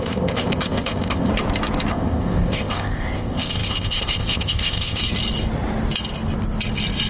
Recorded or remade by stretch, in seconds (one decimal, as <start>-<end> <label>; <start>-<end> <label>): 0.0-1.3 remade; 1.3-1.9 recorded; 1.9-5.0 remade; 5.0-7.1 recorded